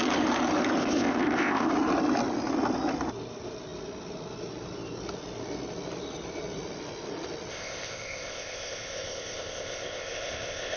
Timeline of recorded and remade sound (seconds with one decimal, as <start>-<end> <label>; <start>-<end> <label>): 0.0-0.8 recorded; 0.8-1.7 remade; 1.7-7.5 recorded; 7.5-10.8 remade